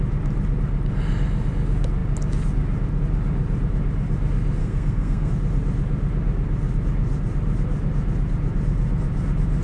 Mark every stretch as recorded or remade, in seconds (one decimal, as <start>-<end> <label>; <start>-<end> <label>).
0.0-4.6 recorded; 4.6-5.3 remade; 5.3-9.6 recorded